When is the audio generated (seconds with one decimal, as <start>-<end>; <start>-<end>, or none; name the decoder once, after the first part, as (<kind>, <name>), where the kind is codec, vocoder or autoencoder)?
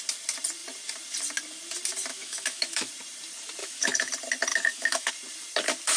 2.1-2.9 (autoencoder, DAC-VAE); 3.6-4.1; 4.5-5.1